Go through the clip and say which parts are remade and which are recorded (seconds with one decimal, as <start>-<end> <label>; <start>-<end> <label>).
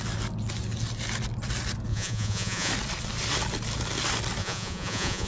0.0-1.9 recorded; 1.9-2.7 remade; 2.7-4.4 recorded; 4.4-5.3 remade